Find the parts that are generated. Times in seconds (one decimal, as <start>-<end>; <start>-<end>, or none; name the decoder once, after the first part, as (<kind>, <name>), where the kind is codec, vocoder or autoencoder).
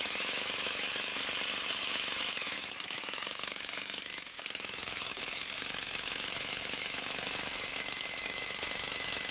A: 0.0-1.1 (autoencoder, DAC-VAE); 1.7-9.3